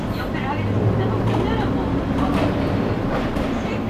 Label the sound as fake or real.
real